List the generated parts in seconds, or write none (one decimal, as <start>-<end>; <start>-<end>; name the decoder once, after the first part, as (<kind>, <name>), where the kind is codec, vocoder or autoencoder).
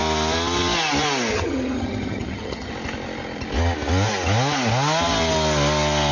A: 1.3-2.7 (vocoder, HiFi-GAN)